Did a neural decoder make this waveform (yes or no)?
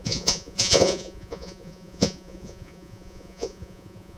yes